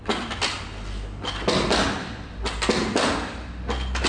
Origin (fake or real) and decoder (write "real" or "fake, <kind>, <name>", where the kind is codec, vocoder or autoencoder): real